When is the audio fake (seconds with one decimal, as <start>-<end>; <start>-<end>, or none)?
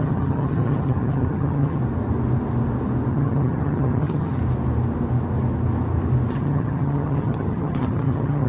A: 0.0-1.8; 3.1-4.4; 6.3-8.5